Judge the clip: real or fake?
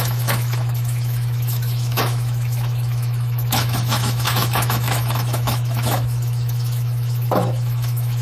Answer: fake